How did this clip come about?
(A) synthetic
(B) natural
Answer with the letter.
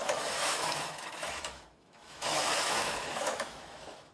A